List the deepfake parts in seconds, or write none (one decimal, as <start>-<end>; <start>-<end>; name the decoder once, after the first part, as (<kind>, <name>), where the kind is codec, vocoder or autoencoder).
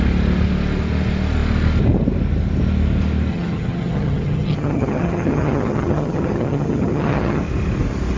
3.3-7.4 (vocoder, HiFi-GAN)